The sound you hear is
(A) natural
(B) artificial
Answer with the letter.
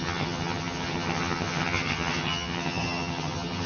B